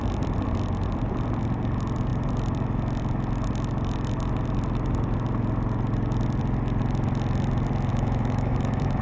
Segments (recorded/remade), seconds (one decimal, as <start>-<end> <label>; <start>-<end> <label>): 0.0-7.9 recorded; 7.9-9.0 remade